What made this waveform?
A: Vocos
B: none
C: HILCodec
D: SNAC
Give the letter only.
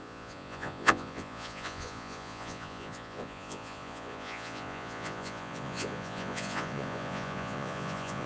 A